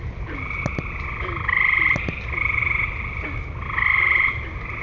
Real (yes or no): yes